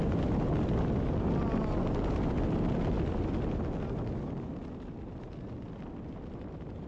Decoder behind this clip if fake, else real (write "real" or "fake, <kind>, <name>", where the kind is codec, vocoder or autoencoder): real